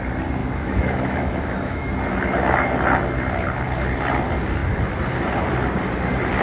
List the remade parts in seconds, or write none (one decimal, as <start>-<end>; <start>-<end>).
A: 0.4-1.9